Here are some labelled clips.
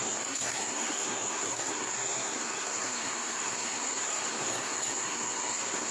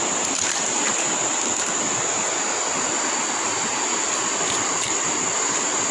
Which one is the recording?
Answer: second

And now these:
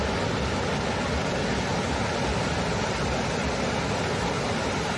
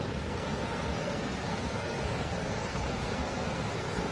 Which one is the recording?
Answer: first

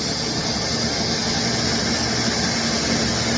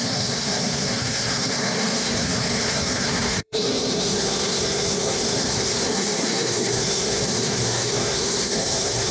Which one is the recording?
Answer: first